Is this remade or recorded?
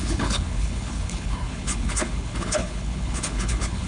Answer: remade